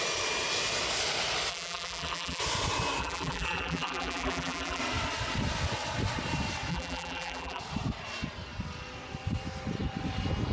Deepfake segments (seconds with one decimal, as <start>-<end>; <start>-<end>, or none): 1.5-2.4; 3.0-4.8; 6.7-7.6